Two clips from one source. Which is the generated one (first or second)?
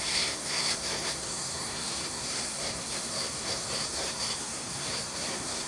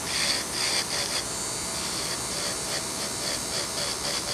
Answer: first